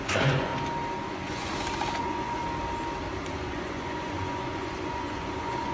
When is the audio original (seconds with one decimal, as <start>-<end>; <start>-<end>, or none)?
0.5-1.1; 1.5-2.0; 2.4-3.3